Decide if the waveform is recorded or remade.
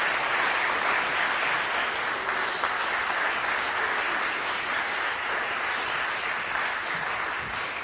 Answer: recorded